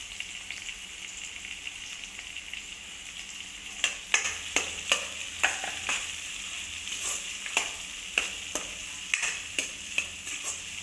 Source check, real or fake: real